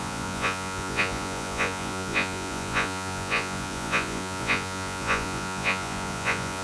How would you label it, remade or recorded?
remade